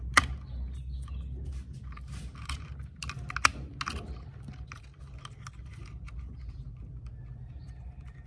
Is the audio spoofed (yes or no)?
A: no